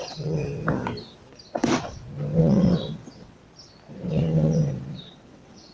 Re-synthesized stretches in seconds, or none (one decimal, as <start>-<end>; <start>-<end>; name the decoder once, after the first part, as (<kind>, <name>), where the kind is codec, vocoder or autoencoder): 0.0-0.4 (vocoder, WaveNeXt); 2.4-3.4; 4.1-4.6; 5.1-5.7